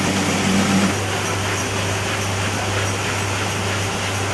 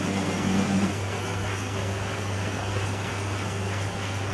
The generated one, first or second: second